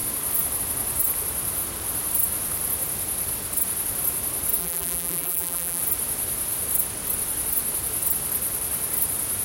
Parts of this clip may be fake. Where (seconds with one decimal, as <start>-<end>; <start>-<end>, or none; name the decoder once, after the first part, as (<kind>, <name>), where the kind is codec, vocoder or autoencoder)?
4.6-5.8 (vocoder, BigVGAN v2)